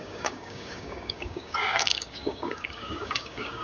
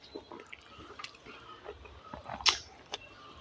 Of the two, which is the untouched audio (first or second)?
second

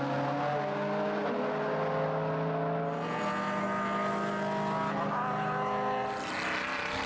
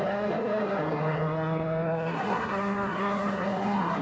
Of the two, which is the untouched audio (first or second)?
first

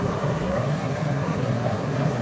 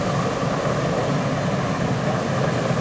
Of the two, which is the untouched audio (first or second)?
second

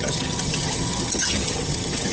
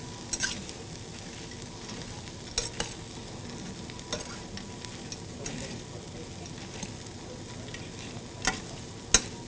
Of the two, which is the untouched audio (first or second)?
second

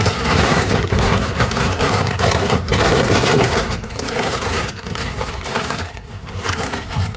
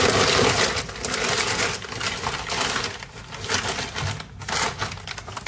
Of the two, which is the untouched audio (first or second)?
second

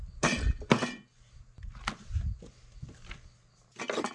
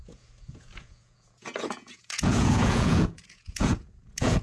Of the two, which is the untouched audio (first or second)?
first